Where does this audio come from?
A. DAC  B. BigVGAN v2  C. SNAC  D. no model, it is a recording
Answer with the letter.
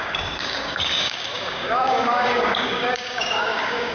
A